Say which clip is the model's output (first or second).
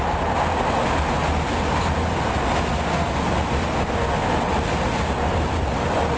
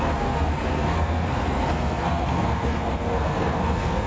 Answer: second